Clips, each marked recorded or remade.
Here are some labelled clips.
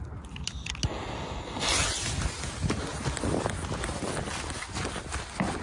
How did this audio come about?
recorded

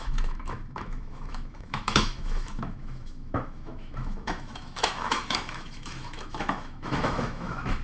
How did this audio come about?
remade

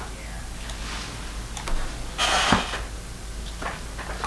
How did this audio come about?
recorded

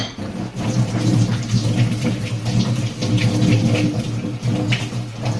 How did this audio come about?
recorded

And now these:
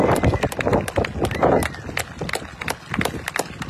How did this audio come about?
recorded